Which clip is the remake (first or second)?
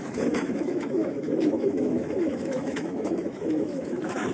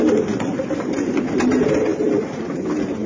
first